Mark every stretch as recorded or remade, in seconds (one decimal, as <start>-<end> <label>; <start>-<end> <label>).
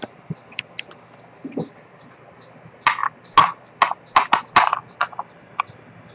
0.0-6.1 recorded